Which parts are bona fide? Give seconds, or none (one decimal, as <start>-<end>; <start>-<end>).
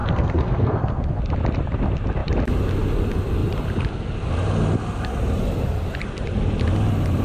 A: 1.2-7.2